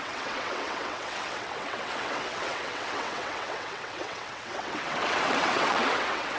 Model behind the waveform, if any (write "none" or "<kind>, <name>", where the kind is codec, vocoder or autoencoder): vocoder, WaveNeXt